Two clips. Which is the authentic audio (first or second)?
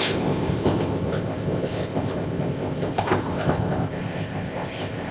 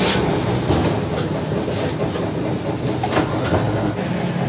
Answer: second